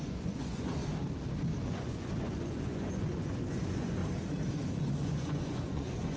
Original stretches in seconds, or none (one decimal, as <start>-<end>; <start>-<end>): 0.8-1.7; 4.0-5.0

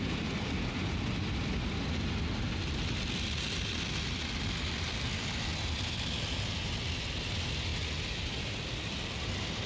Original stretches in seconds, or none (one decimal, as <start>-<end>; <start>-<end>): 0.0-9.7

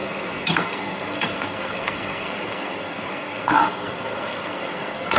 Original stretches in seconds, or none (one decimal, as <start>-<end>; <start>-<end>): none

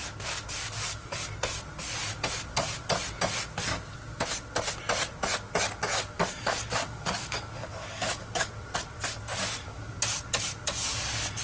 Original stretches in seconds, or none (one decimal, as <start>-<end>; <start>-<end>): 0.0-0.6; 1.3-5.9; 8.5-11.4

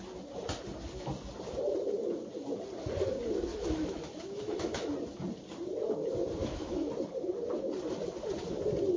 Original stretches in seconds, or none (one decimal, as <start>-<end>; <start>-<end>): 0.0-3.5; 4.9-6.4; 6.9-9.0

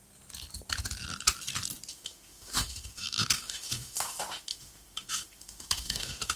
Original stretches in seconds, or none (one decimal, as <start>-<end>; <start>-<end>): 0.0-1.9